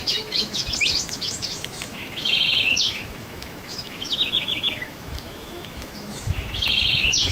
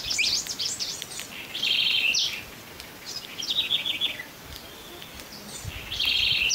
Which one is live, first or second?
second